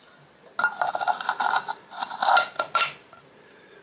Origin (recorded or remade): recorded